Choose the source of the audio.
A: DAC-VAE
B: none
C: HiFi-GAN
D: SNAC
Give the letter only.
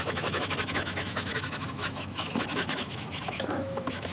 A